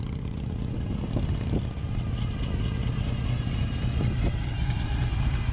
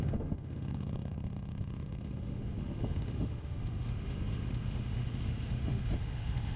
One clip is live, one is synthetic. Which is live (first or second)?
first